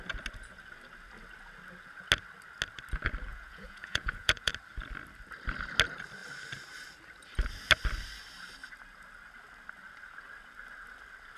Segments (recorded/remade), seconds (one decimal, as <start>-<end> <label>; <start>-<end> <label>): 0.0-3.3 recorded; 3.3-4.5 remade; 4.5-11.4 recorded